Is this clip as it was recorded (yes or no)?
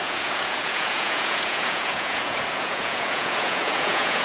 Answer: no